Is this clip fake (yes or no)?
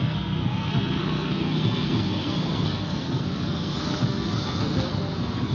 yes